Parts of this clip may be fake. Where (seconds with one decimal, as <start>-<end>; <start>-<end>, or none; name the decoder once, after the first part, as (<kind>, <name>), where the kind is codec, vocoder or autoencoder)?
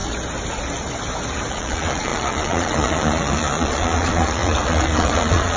1.5-5.6 (vocoder, Vocos)